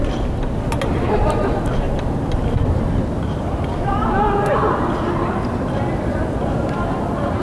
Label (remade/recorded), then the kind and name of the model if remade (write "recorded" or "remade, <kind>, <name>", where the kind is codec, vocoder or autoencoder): recorded